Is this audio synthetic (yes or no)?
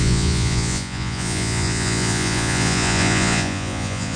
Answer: yes